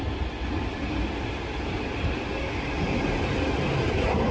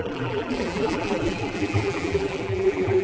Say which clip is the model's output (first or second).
second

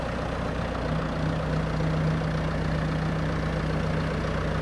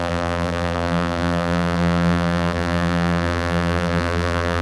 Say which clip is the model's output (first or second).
second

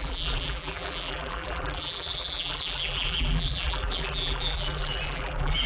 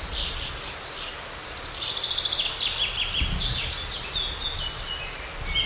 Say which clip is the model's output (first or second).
first